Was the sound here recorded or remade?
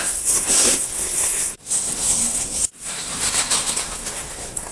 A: remade